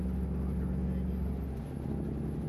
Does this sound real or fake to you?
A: real